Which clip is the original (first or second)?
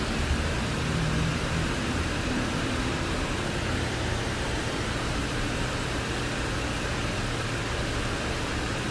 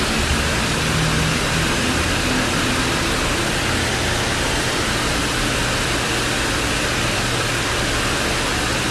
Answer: second